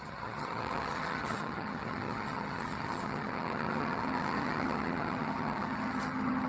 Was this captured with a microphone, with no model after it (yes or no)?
no